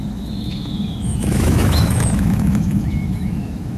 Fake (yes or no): yes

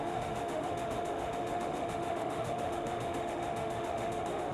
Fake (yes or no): yes